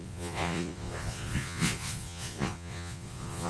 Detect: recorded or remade remade